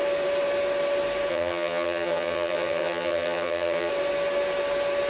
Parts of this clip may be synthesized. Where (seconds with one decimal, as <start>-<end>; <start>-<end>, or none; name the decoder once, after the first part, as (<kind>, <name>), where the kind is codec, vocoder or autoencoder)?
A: 1.3-3.9 (vocoder, HiFi-GAN)